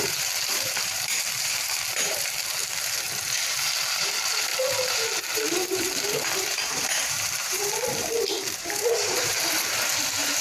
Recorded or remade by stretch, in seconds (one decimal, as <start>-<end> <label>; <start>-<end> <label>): 0.0-10.4 remade